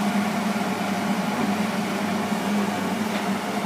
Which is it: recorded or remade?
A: recorded